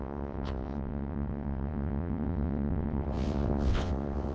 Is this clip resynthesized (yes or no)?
yes